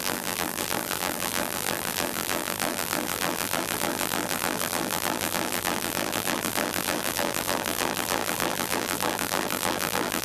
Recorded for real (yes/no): no